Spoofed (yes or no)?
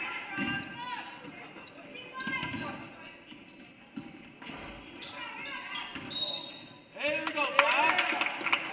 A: no